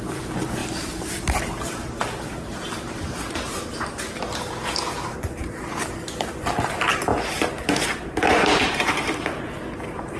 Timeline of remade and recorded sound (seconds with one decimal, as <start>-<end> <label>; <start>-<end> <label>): 0.0-10.2 remade

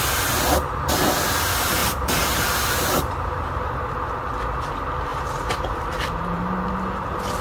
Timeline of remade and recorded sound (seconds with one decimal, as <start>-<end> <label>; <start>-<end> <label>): 0.0-1.8 recorded; 1.8-3.7 remade; 3.7-5.1 recorded; 5.1-6.7 remade; 6.7-7.4 recorded

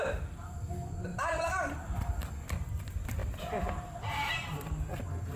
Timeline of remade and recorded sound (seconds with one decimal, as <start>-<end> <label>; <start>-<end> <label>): 0.0-1.1 recorded; 1.1-2.0 remade; 2.0-3.2 recorded; 3.2-4.9 remade; 4.9-5.4 recorded

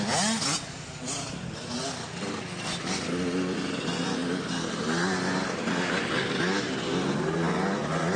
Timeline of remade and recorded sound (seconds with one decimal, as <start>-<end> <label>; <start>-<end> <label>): 0.0-8.2 recorded

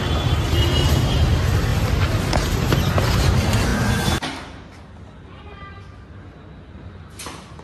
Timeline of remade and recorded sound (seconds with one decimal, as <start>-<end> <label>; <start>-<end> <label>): 0.0-7.6 recorded

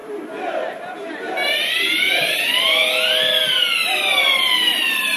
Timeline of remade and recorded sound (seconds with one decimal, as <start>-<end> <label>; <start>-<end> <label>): 0.0-1.7 remade; 1.7-5.2 recorded